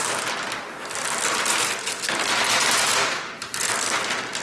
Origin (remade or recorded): recorded